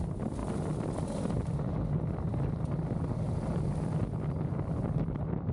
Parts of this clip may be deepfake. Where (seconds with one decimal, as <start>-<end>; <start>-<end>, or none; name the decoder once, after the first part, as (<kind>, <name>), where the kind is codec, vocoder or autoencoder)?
none